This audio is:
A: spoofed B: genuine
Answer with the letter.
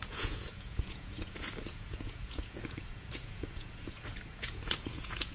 A